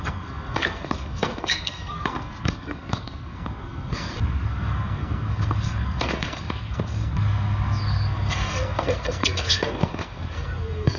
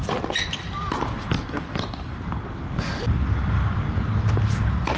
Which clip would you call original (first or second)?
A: second